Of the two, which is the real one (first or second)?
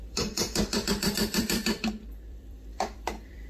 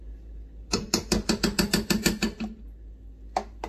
second